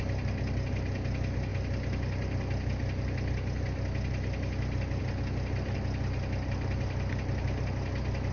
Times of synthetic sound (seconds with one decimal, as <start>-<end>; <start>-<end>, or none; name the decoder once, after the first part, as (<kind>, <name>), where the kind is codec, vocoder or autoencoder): none